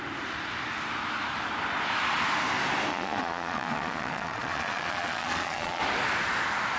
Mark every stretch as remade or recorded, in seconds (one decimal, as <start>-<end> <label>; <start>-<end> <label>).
0.0-2.9 recorded; 2.9-5.8 remade; 5.8-6.8 recorded